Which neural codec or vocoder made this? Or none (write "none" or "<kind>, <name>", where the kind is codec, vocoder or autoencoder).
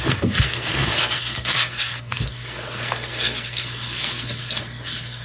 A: codec, SNAC